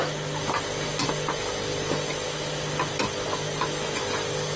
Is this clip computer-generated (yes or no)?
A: no